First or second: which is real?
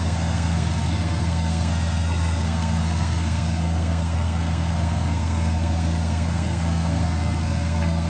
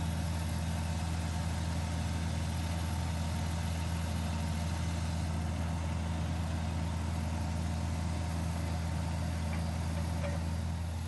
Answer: second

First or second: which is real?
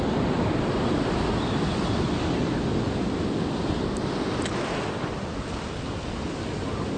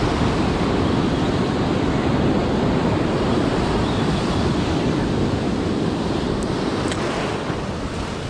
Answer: first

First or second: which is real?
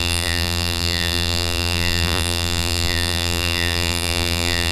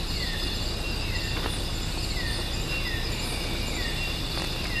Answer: second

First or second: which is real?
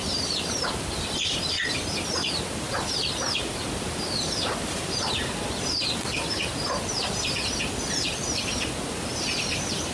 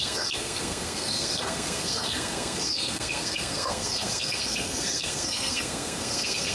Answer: first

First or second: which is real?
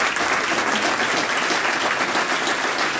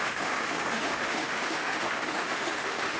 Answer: first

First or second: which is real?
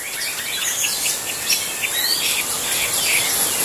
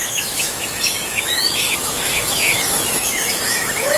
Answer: first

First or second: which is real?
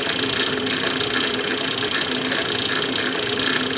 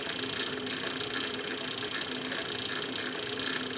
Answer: second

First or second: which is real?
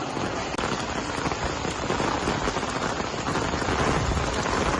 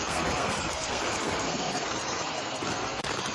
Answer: first